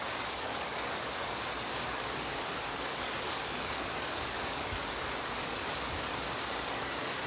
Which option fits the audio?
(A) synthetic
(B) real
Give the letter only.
A